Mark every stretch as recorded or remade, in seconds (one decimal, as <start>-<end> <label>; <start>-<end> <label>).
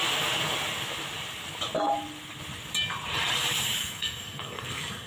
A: 0.0-3.8 recorded; 3.8-5.1 remade